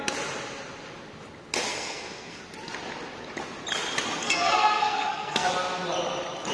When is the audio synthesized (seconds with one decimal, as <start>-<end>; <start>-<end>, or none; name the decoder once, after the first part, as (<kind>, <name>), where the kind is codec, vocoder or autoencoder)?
1.7-2.4 (codec, SNAC); 4.2-5.5

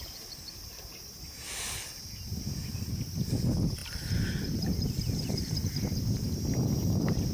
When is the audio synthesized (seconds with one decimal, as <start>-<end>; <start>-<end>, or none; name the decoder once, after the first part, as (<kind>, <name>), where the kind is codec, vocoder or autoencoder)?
none

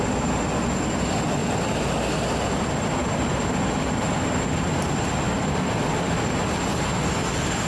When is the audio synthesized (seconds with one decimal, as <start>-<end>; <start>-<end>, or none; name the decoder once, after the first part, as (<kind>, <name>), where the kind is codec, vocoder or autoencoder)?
none

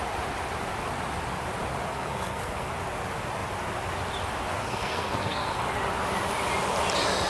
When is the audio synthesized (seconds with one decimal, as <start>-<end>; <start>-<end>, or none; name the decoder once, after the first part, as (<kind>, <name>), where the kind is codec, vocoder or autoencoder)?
1.9-2.7 (codec, SNAC); 4.5-5.6

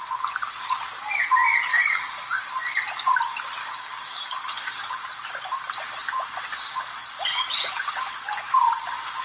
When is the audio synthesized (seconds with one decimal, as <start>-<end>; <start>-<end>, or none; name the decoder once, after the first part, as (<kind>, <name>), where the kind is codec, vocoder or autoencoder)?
1.7-2.4 (codec, DAC); 3.6-4.8

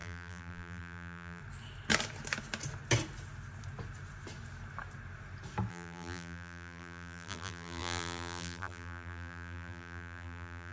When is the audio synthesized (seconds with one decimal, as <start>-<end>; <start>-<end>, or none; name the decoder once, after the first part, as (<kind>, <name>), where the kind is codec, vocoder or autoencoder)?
0.0-1.4 (vocoder, BigVGAN v2); 5.7-10.7

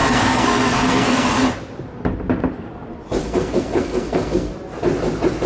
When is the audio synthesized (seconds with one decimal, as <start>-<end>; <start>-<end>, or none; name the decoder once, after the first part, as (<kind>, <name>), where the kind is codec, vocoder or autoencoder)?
0.0-1.3 (codec, SNAC); 3.2-4.5

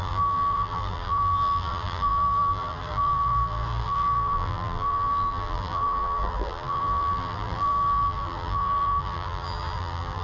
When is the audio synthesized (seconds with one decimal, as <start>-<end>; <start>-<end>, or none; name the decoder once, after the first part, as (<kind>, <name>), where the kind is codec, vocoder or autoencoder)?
0.0-10.2 (vocoder, BigVGAN v2)